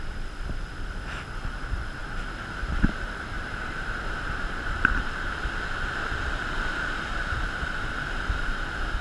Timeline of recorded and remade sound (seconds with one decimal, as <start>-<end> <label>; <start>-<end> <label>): 0.0-9.0 remade